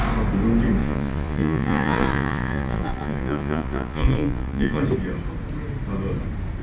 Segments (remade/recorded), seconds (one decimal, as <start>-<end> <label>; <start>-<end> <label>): 0.0-0.8 recorded; 0.8-4.8 remade; 4.8-6.6 recorded